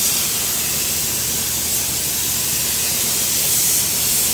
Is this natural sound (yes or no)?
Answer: yes